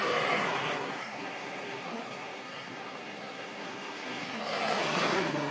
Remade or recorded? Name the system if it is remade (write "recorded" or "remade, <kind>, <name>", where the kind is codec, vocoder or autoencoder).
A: remade, codec, SNAC